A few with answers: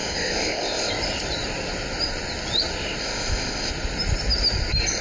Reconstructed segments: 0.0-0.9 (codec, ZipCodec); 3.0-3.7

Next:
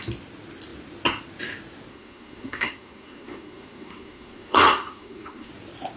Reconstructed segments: 1.9-5.5 (codec, SNAC)

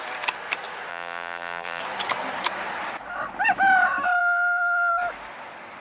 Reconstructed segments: 0.9-1.8 (vocoder, BigVGAN v2); 4.2-4.9

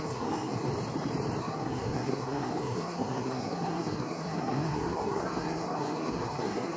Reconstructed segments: 0.0-0.7 (codec, SNAC); 1.4-6.8